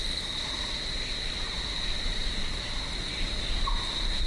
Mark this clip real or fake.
real